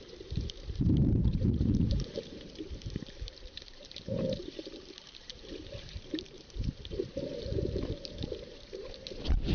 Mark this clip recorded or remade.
remade